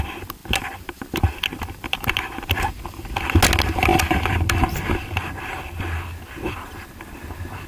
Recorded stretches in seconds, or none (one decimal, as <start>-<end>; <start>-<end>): 0.0-7.7